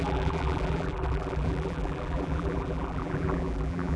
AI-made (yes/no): yes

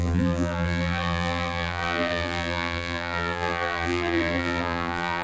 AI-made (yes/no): yes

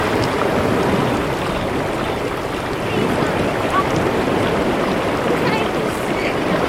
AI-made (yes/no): no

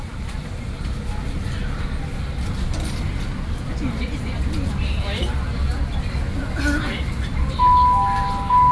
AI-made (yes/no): no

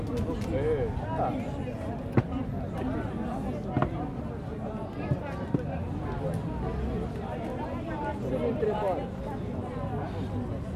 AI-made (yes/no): no